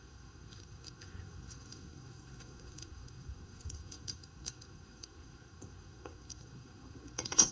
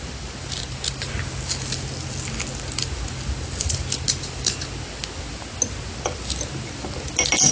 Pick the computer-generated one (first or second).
first